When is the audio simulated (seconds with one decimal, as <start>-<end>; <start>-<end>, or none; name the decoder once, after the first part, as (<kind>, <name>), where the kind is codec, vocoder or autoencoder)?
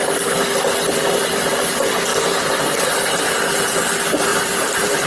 4.3-5.1 (vocoder, BigVGAN v2)